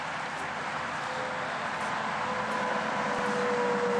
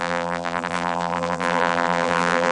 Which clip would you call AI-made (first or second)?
second